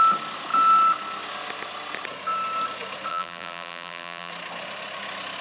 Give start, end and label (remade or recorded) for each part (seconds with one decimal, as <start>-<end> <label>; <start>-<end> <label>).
0.0-3.1 recorded; 3.1-4.3 remade; 4.3-5.4 recorded